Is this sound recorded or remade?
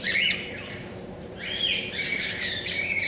remade